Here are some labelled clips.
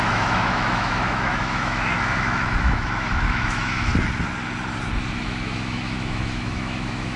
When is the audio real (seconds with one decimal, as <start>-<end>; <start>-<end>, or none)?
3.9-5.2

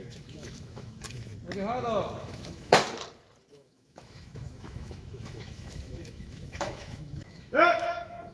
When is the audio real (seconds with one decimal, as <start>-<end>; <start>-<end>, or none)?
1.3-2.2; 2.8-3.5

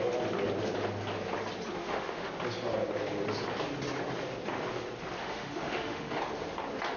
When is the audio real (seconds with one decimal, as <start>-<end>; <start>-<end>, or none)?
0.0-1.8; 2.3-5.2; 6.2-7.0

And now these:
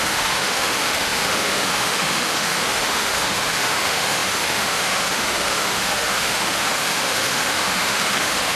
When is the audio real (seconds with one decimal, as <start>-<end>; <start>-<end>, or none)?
none